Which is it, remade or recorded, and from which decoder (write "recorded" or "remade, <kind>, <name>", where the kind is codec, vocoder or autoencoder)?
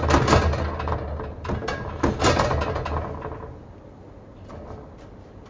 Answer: recorded